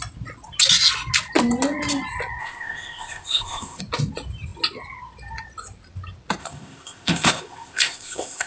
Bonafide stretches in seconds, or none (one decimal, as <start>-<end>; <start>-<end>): 0.0-2.4; 3.8-6.4